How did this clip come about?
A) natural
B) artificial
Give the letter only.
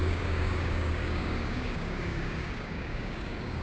B